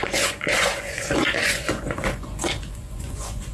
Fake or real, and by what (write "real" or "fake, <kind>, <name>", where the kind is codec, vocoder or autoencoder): fake, vocoder, Vocos